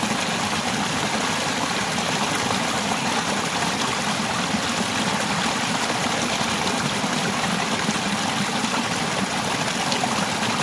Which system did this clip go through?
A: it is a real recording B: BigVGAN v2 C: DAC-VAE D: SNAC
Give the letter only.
A